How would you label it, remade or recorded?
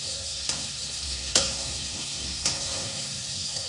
remade